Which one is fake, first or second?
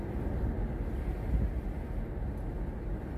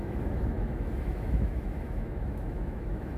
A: second